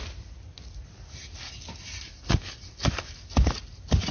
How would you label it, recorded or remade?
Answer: recorded